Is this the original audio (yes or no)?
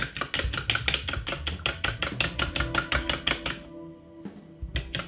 yes